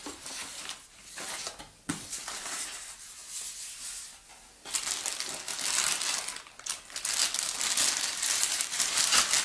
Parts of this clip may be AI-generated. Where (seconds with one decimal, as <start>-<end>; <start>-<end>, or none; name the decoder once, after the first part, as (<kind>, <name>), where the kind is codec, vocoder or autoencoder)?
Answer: 1.9-3.2 (vocoder, BigVGAN v2); 7.7-9.4

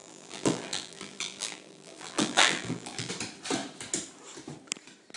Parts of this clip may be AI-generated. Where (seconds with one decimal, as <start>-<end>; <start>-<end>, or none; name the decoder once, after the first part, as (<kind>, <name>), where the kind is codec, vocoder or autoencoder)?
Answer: 0.0-3.1 (vocoder, BigVGAN v2)

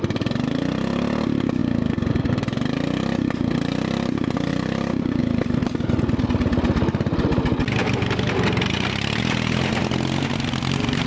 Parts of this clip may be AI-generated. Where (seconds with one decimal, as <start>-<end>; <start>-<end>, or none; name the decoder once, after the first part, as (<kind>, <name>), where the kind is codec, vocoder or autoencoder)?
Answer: 4.5-5.2 (vocoder, BigVGAN v2)

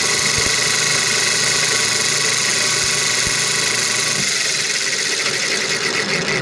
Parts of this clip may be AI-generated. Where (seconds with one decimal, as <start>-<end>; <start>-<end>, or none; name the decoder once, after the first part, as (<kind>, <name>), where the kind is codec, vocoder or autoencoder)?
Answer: none

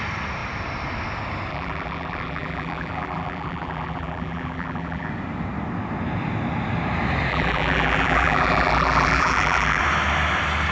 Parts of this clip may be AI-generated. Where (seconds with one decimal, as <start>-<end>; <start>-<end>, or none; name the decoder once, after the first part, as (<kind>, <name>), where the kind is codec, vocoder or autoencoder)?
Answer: 1.5-5.1 (vocoder, BigVGAN v2); 7.3-9.8